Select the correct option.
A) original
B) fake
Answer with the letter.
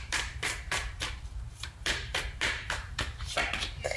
B